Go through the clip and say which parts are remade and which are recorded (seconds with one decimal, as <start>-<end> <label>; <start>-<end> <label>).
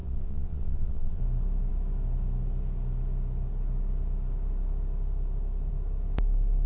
0.0-1.2 remade; 1.2-6.7 recorded